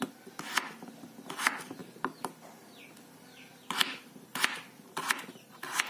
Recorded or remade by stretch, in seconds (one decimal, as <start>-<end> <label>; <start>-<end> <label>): 0.0-5.9 recorded